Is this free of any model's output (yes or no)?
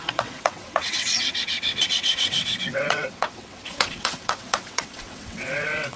no